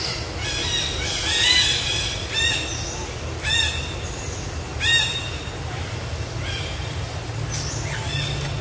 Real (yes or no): yes